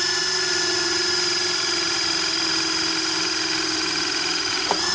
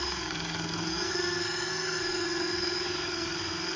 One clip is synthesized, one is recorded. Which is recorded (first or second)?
first